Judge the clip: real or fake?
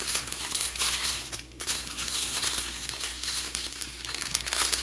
fake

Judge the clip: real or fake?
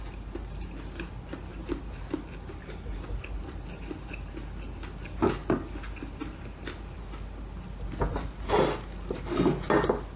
real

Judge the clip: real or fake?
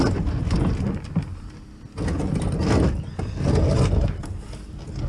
real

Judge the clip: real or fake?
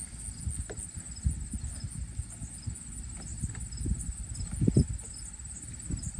real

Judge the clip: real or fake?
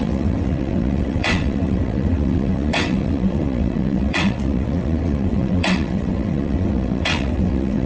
fake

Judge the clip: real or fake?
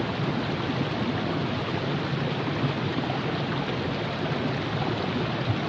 real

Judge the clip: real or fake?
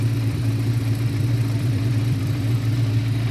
fake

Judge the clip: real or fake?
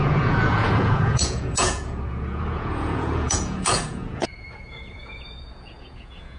fake